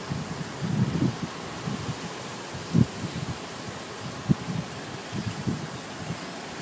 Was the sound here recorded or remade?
recorded